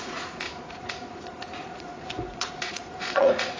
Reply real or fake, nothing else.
fake